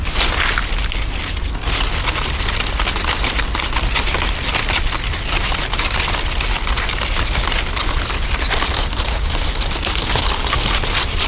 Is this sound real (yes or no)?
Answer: yes